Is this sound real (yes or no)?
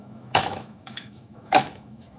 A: no